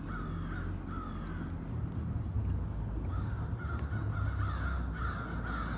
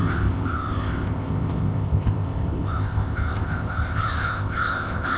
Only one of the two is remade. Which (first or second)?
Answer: second